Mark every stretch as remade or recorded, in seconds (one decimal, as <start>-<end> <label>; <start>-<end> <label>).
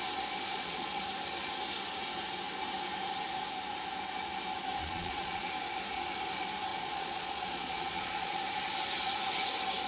0.0-0.5 recorded; 0.5-1.0 remade; 1.0-4.8 recorded; 4.8-5.5 remade; 5.5-6.7 recorded; 6.7-8.4 remade; 8.4-9.9 recorded